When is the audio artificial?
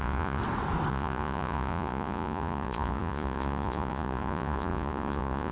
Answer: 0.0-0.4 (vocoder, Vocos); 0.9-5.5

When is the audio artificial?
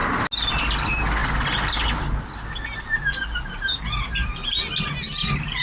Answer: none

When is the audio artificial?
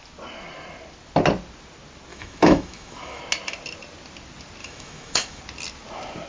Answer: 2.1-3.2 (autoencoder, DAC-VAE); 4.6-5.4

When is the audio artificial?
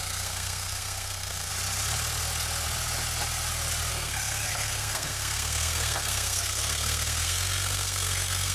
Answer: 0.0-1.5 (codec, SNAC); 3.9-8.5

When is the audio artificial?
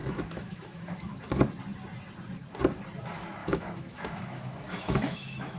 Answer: 0.0-1.2 (autoencoder, DAC-VAE); 3.4-5.6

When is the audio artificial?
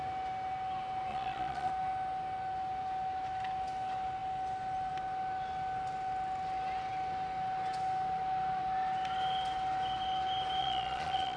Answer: 1.1-1.7 (vocoder, Vocos); 10.6-11.4